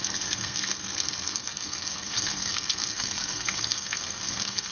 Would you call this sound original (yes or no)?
no